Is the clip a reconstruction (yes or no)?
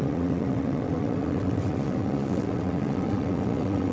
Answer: yes